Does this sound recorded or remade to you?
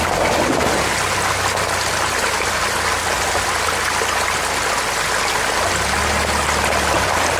recorded